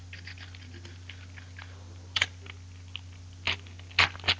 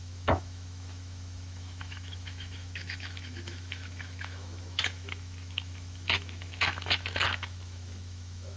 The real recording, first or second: first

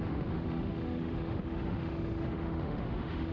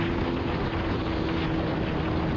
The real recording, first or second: second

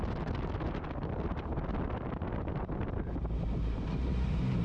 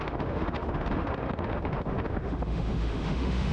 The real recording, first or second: first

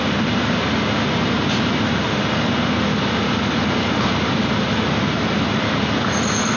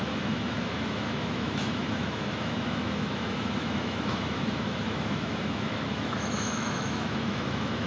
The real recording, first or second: first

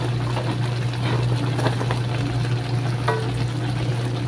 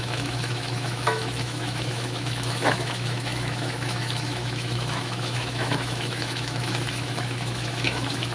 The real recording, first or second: first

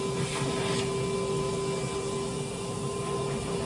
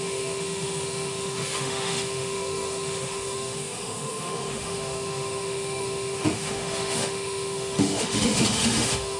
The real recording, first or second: first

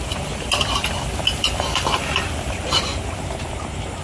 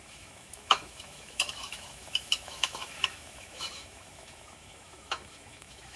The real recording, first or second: first